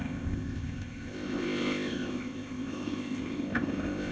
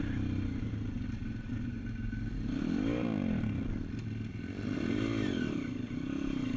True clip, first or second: second